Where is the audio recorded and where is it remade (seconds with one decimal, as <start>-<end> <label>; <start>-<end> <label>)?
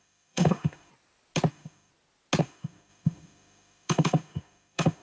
0.0-0.9 remade; 0.9-1.5 recorded; 1.5-1.9 remade; 1.9-2.4 recorded; 2.4-5.0 remade